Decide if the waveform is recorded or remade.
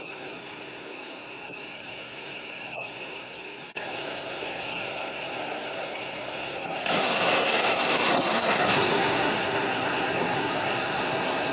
remade